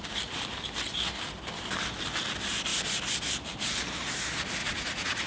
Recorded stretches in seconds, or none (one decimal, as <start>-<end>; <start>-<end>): 0.0-4.6